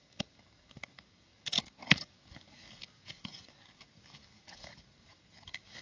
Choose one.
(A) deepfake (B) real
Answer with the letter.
A